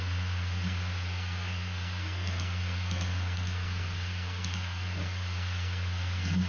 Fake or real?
fake